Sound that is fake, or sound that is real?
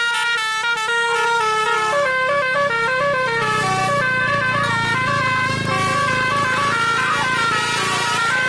real